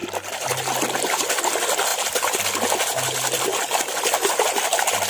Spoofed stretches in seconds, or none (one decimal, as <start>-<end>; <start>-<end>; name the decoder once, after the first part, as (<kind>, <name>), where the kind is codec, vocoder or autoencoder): none